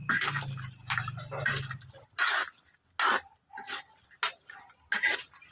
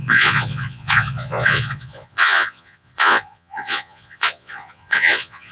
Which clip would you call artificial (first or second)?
second